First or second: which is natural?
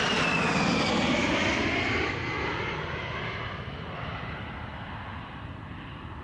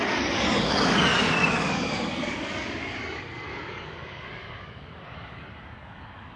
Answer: first